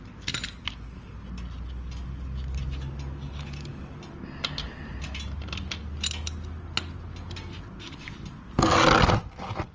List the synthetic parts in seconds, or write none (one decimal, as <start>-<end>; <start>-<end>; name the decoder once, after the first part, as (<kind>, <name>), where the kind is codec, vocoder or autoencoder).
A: none